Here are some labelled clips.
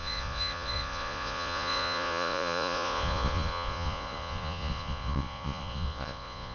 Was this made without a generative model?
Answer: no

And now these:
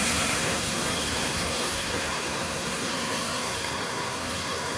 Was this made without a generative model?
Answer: no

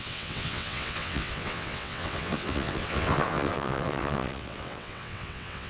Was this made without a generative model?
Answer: no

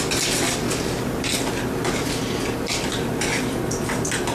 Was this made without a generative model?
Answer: yes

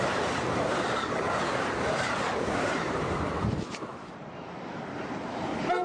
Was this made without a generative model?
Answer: no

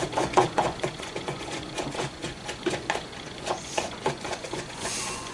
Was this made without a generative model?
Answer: no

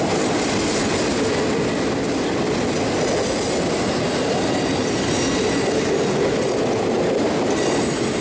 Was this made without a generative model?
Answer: yes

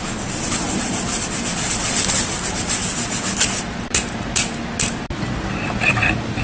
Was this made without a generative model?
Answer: yes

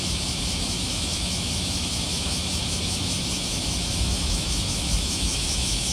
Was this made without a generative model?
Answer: no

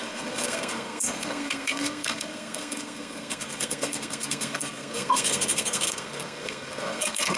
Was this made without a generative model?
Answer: no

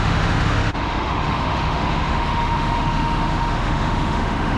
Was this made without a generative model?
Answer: no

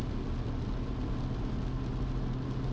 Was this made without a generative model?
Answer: yes